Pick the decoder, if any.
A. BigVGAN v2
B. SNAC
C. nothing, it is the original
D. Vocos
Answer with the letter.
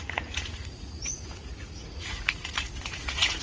D